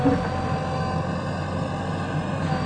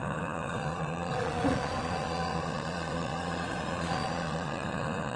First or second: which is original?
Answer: first